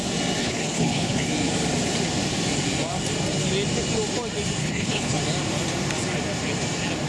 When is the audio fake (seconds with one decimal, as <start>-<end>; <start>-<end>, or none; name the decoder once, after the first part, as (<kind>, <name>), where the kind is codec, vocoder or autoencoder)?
0.4-1.3 (codec, HILCodec); 4.6-5.2